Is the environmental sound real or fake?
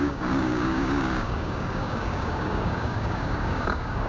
fake